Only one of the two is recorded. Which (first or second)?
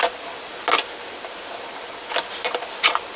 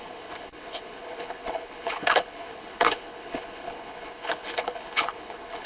first